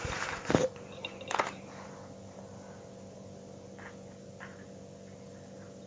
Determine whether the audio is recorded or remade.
recorded